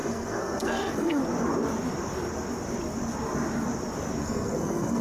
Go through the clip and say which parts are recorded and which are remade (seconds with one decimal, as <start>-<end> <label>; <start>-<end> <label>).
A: 0.0-1.2 remade; 1.2-4.2 recorded; 4.2-5.0 remade